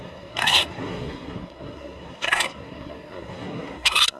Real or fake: fake